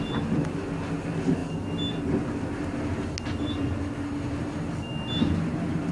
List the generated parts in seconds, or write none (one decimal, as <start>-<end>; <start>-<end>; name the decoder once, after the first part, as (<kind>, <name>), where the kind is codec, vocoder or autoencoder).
none